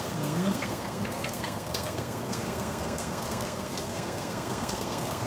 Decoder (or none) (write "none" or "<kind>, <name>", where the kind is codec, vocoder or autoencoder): codec, SNAC